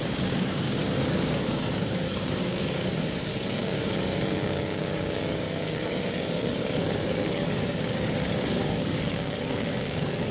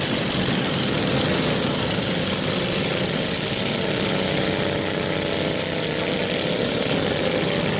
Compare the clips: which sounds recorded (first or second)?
second